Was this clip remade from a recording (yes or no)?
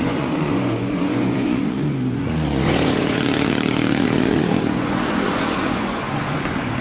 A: yes